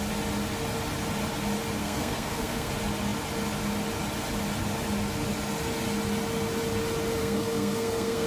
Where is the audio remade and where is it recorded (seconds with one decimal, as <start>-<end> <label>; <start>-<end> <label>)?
0.0-1.8 recorded; 1.8-2.7 remade; 2.7-7.2 recorded; 7.2-8.3 remade